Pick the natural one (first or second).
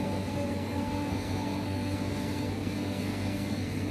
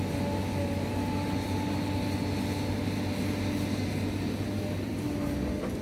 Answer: second